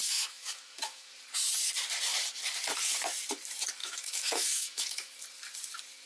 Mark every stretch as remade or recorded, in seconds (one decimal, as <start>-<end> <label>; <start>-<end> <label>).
0.0-1.1 remade; 1.1-3.8 recorded; 3.8-5.1 remade; 5.1-6.1 recorded